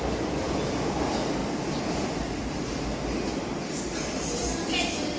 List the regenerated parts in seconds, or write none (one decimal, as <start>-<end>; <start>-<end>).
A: none